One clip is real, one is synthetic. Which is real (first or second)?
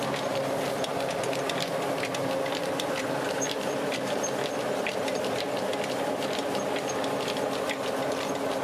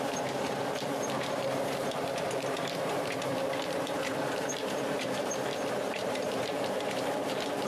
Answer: first